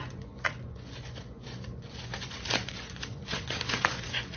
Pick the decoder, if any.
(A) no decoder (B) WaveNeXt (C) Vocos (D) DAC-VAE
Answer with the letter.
C